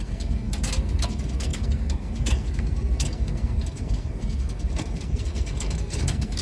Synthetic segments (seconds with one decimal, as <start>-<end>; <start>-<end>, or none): 0.0-6.4